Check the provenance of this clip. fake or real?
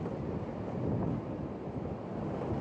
real